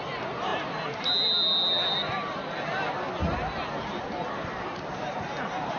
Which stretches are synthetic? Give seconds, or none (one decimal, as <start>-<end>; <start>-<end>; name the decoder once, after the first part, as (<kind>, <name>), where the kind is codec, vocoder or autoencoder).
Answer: none